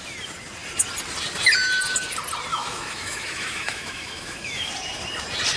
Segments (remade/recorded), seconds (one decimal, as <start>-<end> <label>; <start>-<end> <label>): 0.0-2.5 recorded; 2.5-4.7 remade; 4.7-5.6 recorded